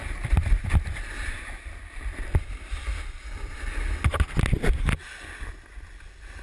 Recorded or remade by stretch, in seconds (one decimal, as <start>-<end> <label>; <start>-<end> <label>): 0.0-3.8 remade; 3.8-6.4 recorded